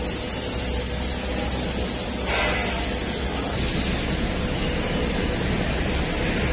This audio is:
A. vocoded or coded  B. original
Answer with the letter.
B